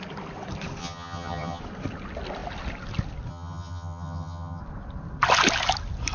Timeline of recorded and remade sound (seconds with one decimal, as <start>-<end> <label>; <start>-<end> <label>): 0.0-0.8 recorded; 0.8-1.6 remade; 1.6-3.3 recorded; 3.3-4.6 remade; 4.6-6.1 recorded